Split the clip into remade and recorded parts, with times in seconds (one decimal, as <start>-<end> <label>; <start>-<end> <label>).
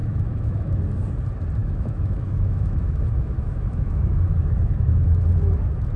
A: 0.0-0.8 remade; 0.8-1.6 recorded; 1.6-5.2 remade; 5.2-6.0 recorded